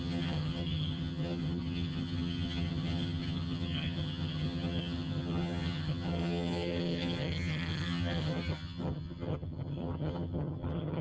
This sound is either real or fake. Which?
fake